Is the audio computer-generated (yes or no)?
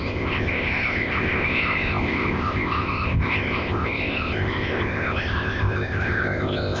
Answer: yes